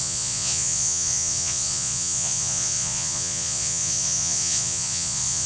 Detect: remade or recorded remade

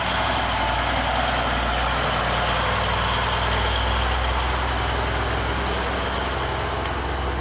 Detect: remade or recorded recorded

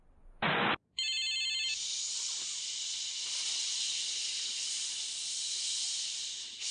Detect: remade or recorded recorded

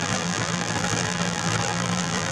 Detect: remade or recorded remade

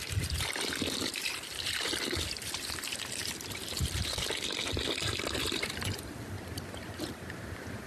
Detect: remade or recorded remade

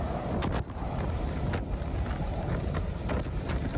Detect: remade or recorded recorded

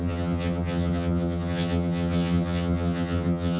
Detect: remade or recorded remade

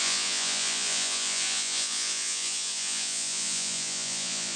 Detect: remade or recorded remade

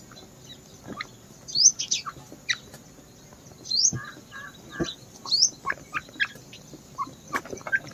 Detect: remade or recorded recorded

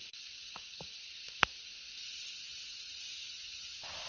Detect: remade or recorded recorded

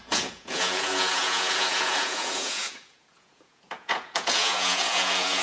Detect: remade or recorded remade